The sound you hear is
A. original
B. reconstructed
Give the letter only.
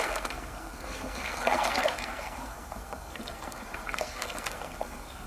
B